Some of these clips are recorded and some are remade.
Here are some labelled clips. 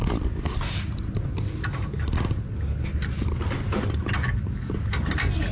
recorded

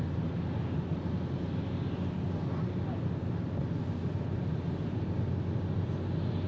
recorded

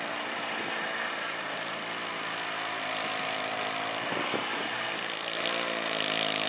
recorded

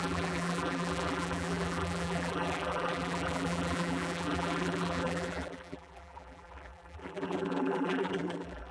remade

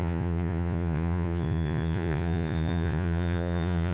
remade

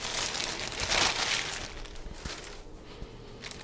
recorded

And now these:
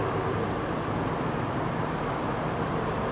recorded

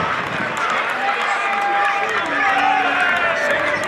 recorded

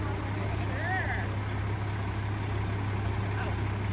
recorded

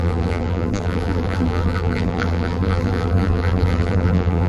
remade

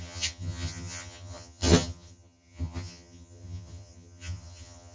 remade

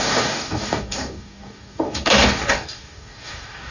remade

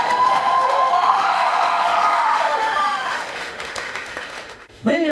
remade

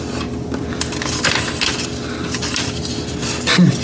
recorded